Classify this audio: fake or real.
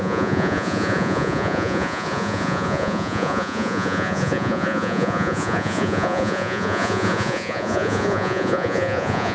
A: fake